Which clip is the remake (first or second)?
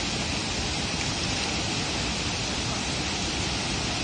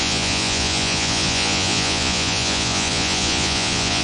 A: second